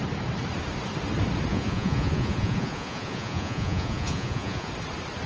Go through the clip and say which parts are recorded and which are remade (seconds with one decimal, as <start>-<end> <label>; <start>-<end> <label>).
0.0-1.5 recorded; 1.5-4.7 remade; 4.7-5.3 recorded